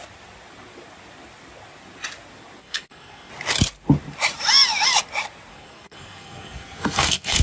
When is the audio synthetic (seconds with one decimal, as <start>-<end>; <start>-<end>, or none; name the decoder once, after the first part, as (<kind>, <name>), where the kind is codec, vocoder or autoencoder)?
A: 2.6-3.3 (codec, SNAC); 5.5-7.4